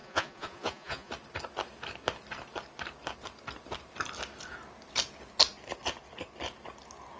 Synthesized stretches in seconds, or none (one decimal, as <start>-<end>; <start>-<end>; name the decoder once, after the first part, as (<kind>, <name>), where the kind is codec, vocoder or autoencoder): 0.0-1.1 (vocoder, Vocos)

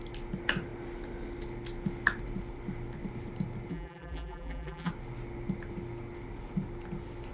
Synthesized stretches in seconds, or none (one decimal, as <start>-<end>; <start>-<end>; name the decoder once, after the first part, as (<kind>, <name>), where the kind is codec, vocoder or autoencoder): 3.7-4.9 (vocoder, BigVGAN v2)

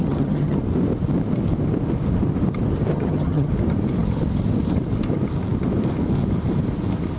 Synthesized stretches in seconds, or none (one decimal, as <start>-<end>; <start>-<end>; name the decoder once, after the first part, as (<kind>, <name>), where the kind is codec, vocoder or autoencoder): 0.0-0.6 (vocoder, HiFi-GAN); 2.9-3.5

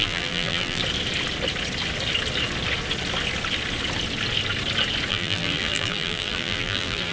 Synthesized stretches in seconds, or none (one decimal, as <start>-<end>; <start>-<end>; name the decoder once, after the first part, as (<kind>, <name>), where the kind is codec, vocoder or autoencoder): 0.0-0.8 (vocoder, BigVGAN v2); 5.1-7.1

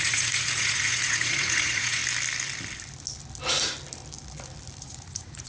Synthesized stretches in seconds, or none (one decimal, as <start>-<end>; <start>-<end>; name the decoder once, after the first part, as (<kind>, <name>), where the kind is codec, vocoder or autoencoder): 0.0-2.0 (vocoder, Vocos); 4.8-5.5

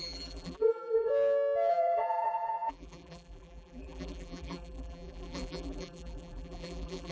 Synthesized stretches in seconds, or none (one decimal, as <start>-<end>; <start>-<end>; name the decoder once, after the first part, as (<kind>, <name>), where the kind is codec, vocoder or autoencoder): 0.0-1.1 (vocoder, BigVGAN v2); 1.7-7.1

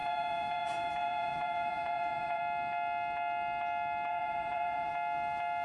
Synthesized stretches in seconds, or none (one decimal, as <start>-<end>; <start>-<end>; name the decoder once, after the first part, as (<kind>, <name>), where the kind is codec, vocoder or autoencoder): 0.0-2.4 (vocoder, Vocos); 4.1-4.9

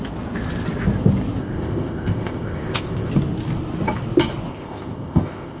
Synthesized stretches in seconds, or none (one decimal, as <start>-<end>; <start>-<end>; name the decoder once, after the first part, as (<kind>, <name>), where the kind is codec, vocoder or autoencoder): 1.4-3.1 (codec, ZipCodec); 4.5-5.6